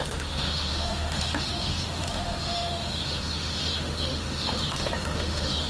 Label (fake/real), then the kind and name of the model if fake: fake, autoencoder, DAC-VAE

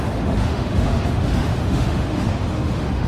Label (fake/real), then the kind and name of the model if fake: fake, autoencoder, DAC-VAE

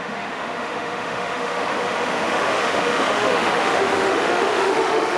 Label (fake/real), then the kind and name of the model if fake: fake, autoencoder, DAC-VAE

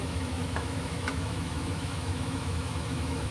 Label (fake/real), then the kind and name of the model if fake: fake, autoencoder, DAC-VAE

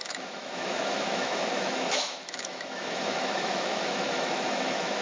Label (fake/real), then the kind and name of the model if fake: fake, autoencoder, DAC-VAE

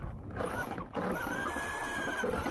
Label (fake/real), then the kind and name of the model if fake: real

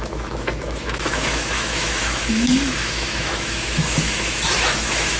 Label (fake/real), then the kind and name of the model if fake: fake, autoencoder, DAC-VAE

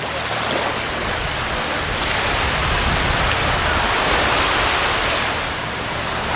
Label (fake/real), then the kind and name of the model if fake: real